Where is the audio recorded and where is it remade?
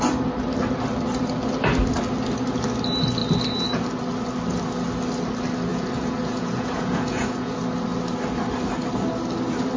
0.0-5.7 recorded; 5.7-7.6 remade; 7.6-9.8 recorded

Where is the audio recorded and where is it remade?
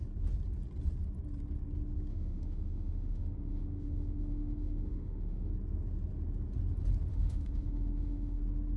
0.0-2.1 recorded; 2.1-5.5 remade; 5.5-7.1 recorded; 7.1-8.4 remade; 8.4-8.8 recorded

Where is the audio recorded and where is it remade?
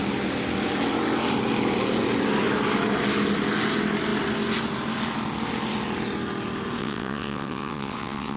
0.0-6.8 recorded; 6.8-8.4 remade